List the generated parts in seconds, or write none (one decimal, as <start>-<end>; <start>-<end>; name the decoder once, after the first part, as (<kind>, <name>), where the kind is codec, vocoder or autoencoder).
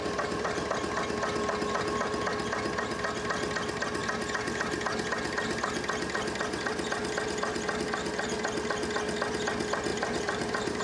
9.9-10.8 (vocoder, BigVGAN v2)